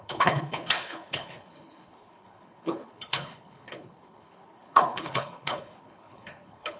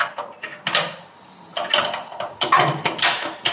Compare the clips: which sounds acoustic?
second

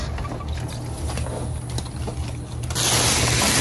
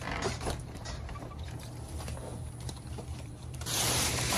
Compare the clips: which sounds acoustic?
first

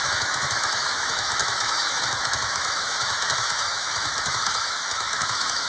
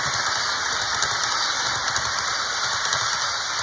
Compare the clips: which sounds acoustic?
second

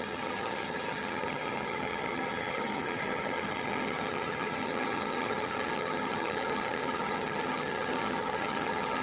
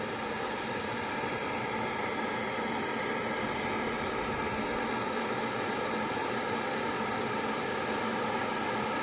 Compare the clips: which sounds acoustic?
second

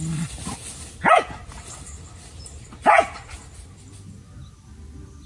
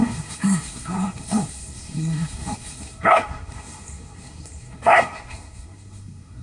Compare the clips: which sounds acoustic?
first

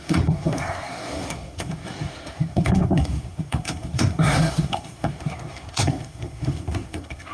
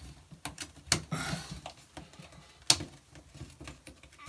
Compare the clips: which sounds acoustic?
second